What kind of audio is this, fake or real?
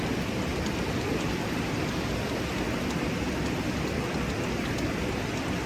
real